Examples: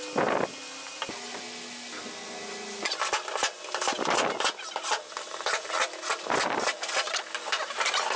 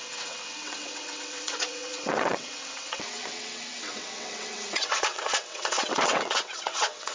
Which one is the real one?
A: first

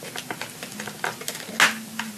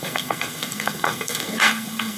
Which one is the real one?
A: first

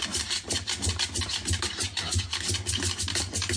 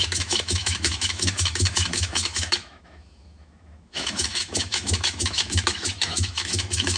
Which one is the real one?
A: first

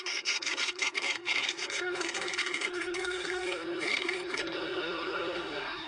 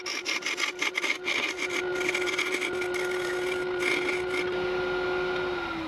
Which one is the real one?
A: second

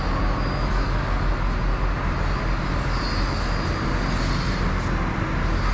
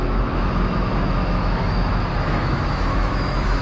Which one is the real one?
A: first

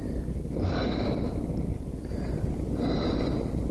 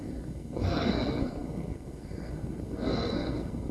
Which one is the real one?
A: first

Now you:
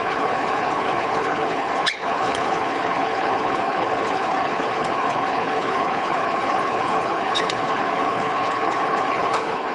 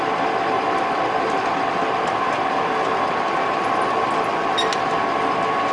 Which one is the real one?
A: second